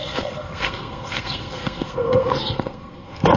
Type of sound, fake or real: fake